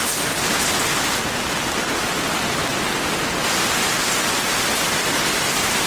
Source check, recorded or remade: recorded